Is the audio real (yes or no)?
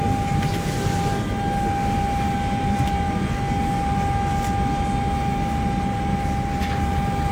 yes